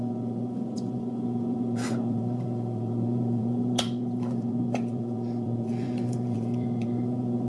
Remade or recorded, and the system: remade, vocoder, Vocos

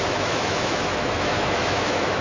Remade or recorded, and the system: remade, autoencoder, DAC-VAE